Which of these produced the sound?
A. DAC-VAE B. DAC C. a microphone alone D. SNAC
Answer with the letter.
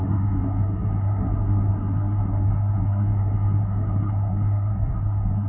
D